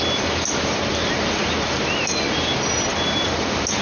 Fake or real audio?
real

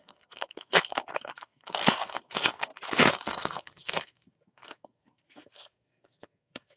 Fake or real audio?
fake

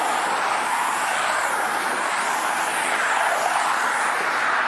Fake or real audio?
real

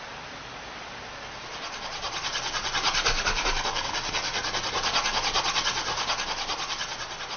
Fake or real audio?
real